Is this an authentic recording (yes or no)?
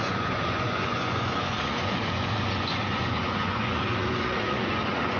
no